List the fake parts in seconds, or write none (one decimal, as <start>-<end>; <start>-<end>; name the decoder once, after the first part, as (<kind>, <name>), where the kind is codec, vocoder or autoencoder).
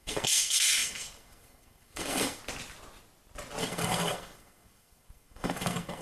0.0-2.4 (codec, SNAC); 3.6-6.0